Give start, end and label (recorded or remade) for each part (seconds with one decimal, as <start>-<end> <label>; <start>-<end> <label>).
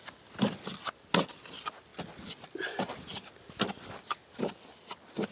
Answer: 0.0-5.3 recorded